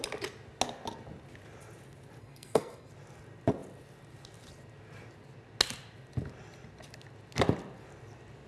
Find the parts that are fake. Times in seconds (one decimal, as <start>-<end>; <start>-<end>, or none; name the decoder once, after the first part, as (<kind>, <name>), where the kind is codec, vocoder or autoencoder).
2.2-2.9 (codec, SNAC)